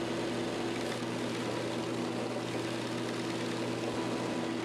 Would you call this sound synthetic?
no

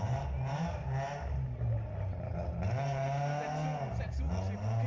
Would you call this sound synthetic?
no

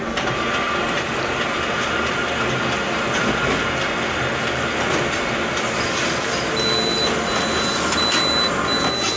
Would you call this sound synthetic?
no